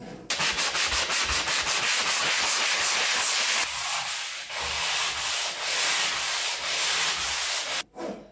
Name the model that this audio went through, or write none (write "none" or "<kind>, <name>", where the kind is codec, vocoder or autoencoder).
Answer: none